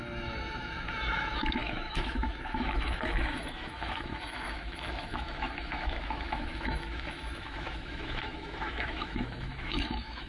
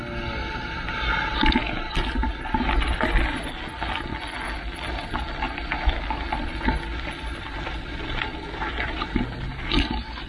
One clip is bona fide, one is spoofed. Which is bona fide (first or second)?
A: second